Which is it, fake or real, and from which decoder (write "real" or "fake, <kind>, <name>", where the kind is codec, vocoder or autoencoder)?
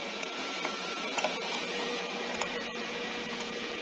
fake, vocoder, Vocos